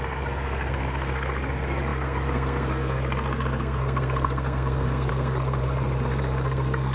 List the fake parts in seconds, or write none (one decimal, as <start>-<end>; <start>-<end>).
0.0-5.6; 6.2-6.9